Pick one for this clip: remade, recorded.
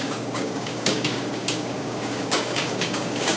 remade